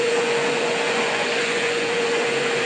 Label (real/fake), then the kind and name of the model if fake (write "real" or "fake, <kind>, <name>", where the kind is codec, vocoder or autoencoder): fake, vocoder, Vocos